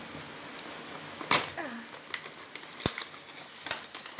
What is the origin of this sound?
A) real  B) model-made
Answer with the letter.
A